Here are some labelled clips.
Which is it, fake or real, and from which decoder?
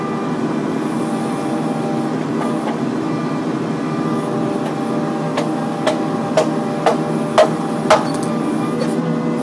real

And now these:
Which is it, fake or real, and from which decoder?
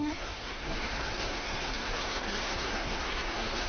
fake, codec, SNAC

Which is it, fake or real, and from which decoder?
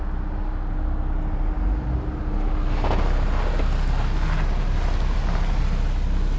real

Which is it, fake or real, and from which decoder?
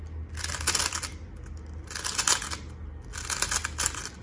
real